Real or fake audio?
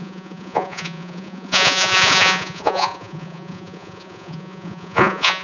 fake